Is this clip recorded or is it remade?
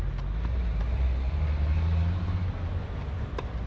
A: recorded